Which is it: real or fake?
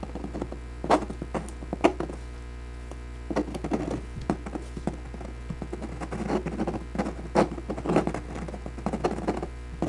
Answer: real